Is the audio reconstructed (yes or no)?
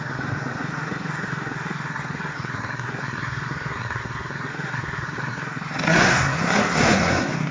yes